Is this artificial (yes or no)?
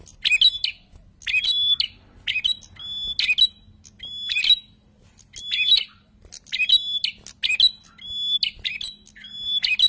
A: no